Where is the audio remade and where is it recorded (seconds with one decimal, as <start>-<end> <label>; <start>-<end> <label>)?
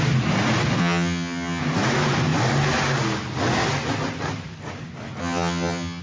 0.0-0.8 recorded; 0.8-1.6 remade; 1.6-5.2 recorded; 5.2-6.0 remade